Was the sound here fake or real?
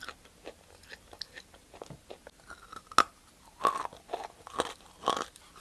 real